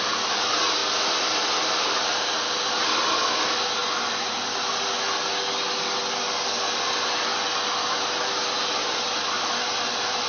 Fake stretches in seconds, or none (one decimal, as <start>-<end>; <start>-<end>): none